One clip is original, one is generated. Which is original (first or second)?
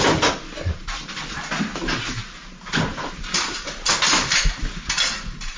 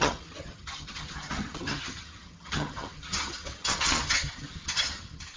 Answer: first